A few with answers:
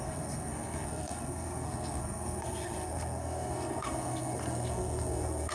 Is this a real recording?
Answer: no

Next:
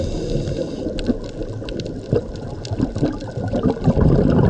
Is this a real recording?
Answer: yes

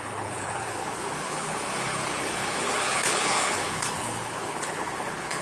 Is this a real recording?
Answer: no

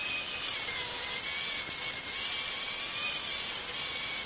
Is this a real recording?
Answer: yes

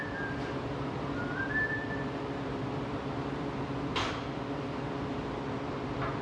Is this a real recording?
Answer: no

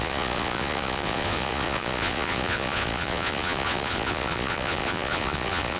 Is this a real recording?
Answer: no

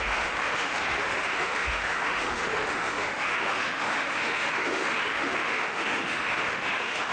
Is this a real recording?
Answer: no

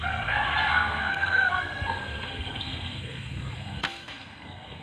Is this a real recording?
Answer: no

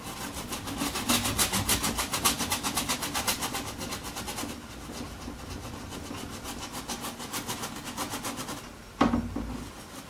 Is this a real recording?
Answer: yes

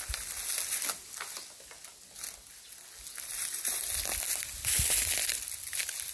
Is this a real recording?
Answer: yes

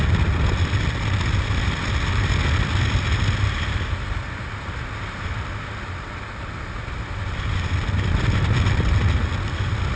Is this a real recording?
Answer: yes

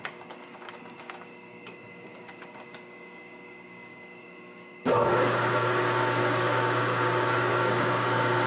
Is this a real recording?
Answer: no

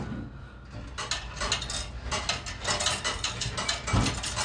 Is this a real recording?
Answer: yes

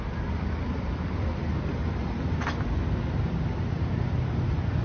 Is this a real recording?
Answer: yes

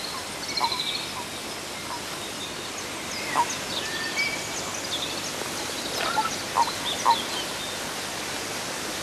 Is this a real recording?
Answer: yes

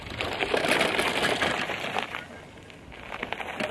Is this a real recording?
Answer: yes